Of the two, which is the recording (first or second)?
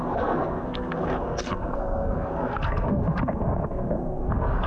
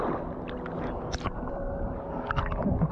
second